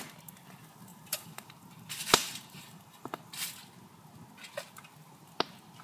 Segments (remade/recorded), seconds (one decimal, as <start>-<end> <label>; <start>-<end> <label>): 0.0-0.9 recorded; 0.9-3.2 remade; 3.2-5.8 recorded